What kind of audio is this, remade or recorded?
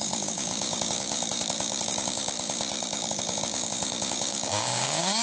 remade